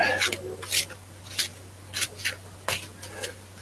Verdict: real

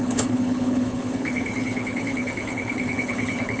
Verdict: fake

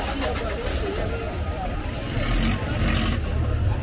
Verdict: real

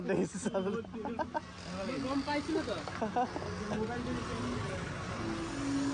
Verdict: real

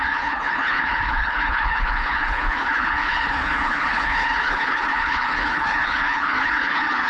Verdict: fake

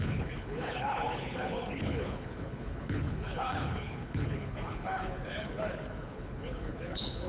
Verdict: fake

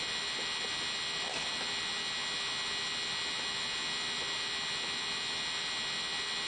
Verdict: real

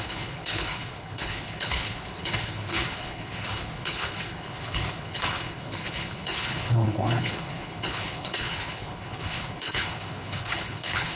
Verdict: fake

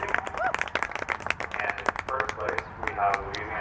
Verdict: real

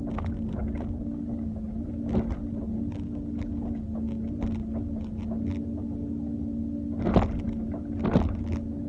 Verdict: real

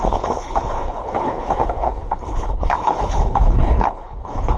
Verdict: fake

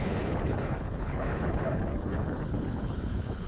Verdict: fake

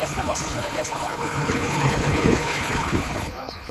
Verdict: fake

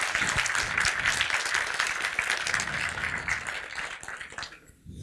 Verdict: real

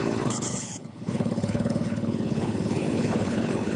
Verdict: fake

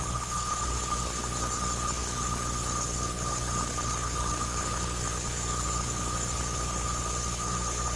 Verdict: fake